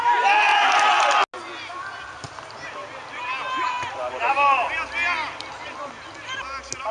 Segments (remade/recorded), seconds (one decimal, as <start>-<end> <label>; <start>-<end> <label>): 0.0-6.9 recorded